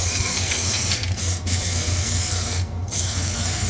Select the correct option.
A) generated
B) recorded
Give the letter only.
A